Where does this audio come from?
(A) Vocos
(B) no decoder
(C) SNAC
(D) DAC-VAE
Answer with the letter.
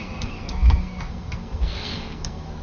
C